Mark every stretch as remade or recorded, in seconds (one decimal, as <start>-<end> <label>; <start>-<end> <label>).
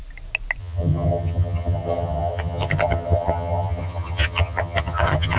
0.0-0.6 recorded; 0.6-5.4 remade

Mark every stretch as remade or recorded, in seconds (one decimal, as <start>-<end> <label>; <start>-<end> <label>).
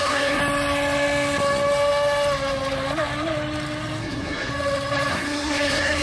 0.0-0.4 remade; 0.4-4.0 recorded; 4.0-4.5 remade; 4.5-5.1 recorded; 5.1-6.0 remade